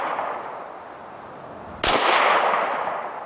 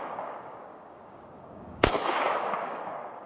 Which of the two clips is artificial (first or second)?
second